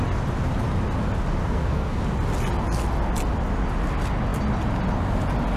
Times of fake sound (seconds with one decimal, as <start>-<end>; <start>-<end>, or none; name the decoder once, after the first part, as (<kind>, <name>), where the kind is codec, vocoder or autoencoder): 1.4-2.0 (codec, SNAC)